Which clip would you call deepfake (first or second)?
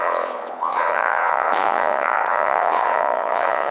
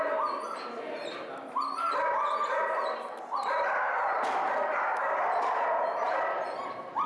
first